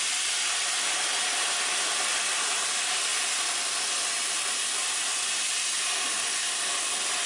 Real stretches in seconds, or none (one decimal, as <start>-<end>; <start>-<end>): 0.0-7.3

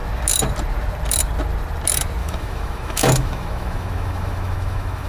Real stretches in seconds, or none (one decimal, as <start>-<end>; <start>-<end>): 0.0-2.2

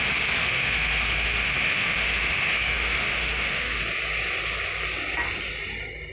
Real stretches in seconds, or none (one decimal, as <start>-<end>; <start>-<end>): 0.0-0.4; 3.8-6.1

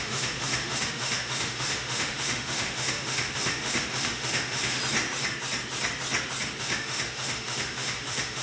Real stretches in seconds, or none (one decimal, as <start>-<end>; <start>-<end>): 4.8-6.6